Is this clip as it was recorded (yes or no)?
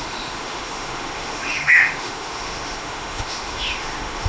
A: no